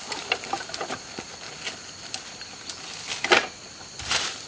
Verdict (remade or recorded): recorded